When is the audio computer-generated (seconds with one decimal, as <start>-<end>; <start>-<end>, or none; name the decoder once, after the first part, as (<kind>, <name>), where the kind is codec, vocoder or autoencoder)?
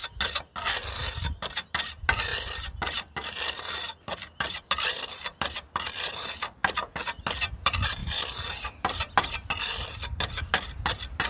0.5-6.6 (vocoder, BigVGAN v2); 7.5-11.3